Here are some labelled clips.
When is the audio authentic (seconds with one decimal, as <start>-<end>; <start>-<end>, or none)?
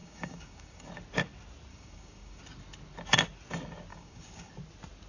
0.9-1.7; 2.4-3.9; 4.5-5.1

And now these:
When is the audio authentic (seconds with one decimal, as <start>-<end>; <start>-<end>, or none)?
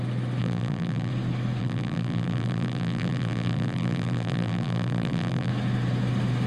0.0-0.4; 1.1-1.6; 5.5-6.5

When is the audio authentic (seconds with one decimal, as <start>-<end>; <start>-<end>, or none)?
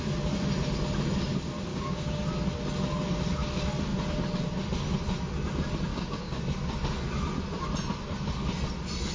0.0-1.7; 2.3-5.9; 6.4-9.1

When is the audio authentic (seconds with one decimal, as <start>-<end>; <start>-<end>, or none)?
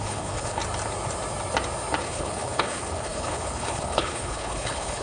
0.6-2.0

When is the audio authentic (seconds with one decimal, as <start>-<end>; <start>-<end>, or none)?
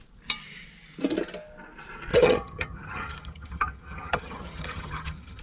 0.0-2.1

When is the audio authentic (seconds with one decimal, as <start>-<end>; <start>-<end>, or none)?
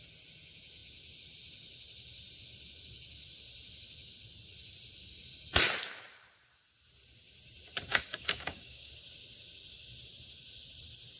0.0-7.9; 8.9-11.2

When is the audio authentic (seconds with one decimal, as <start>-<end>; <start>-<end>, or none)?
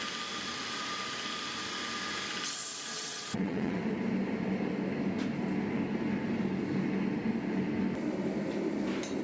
0.0-2.7; 3.8-9.2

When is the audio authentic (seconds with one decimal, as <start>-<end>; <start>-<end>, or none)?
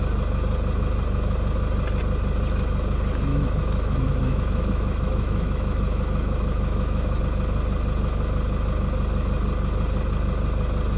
0.0-3.3; 7.2-11.0